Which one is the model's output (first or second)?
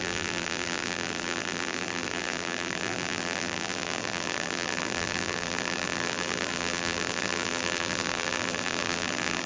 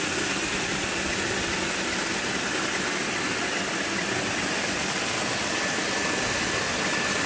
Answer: first